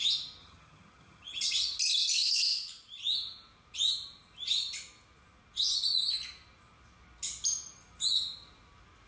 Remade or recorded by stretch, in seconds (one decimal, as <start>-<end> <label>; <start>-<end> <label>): 0.0-0.4 recorded; 0.4-1.5 remade; 1.5-9.1 recorded